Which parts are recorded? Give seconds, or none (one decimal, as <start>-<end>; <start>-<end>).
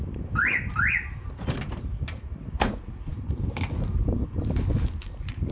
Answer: 0.0-5.5